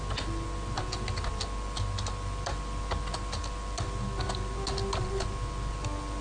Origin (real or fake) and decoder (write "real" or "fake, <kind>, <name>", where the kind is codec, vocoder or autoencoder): real